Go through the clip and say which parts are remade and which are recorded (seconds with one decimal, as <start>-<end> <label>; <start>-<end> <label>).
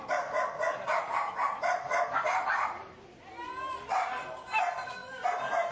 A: 0.0-5.7 recorded